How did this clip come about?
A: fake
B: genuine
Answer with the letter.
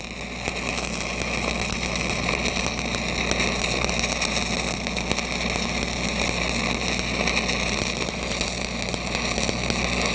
B